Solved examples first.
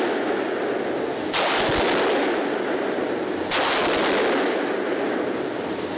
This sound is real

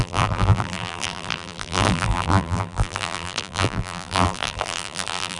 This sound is fake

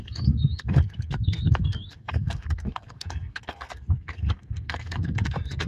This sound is fake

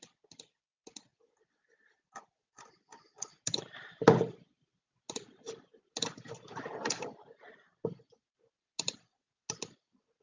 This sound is real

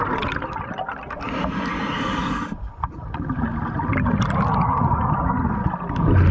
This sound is real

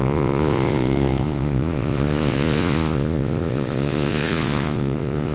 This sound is fake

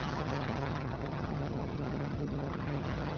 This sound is fake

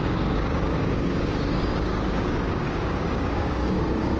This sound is fake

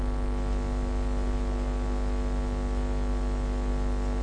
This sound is real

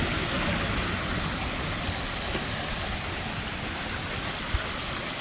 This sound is real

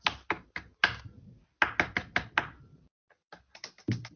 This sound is real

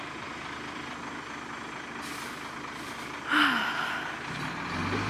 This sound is real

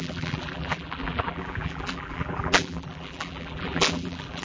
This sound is fake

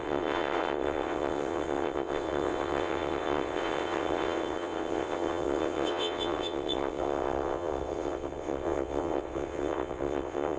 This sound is fake